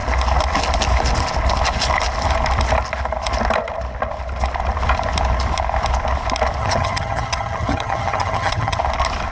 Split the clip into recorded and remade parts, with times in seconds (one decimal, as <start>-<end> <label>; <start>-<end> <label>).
0.0-6.6 recorded; 6.6-8.8 remade; 8.8-9.3 recorded